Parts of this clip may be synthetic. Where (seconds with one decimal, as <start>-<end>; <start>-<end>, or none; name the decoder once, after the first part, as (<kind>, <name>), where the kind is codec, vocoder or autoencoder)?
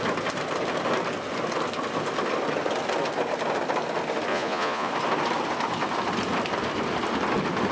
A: 4.3-4.9 (vocoder, Vocos)